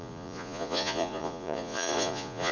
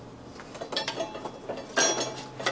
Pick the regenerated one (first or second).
first